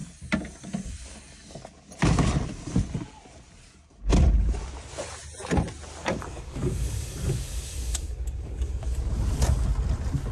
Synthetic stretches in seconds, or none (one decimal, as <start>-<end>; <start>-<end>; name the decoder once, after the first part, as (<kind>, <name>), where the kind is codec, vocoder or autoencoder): 6.0-8.9 (codec, DAC)